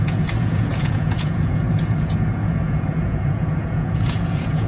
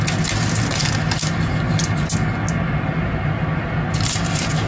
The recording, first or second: second